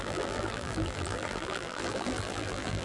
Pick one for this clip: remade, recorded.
remade